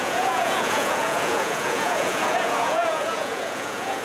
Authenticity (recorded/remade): remade